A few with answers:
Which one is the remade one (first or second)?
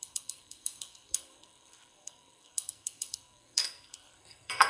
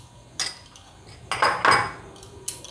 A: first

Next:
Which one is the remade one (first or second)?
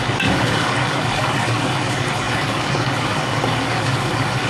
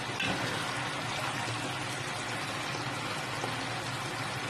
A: first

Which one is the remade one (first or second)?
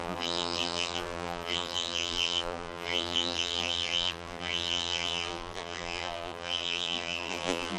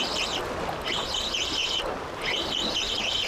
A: first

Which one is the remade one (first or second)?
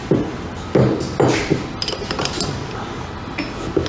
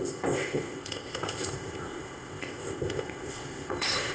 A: second